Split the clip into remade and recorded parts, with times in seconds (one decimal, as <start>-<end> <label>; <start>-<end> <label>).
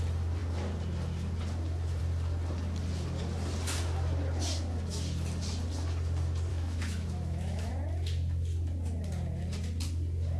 0.0-6.5 recorded; 6.5-7.7 remade; 7.7-10.4 recorded